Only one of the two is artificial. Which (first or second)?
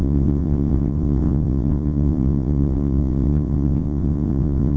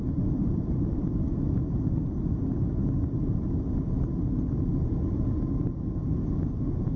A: first